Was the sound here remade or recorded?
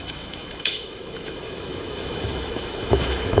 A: remade